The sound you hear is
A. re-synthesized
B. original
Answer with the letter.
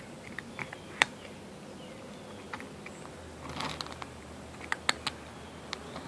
B